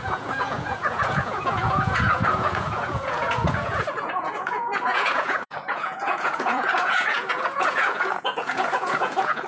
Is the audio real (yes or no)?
no